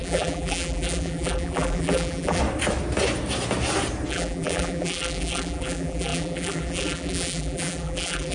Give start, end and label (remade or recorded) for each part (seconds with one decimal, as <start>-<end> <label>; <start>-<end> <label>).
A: 0.0-2.4 remade; 2.4-4.1 recorded; 4.1-8.3 remade